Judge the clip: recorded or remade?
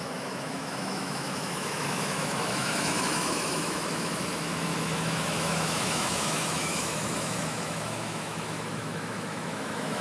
remade